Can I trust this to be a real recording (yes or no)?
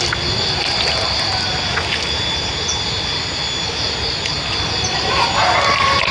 yes